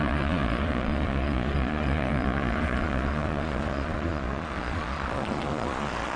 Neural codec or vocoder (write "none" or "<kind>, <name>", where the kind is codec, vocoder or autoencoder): vocoder, Vocos